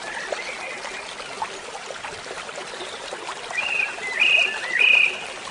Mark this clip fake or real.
real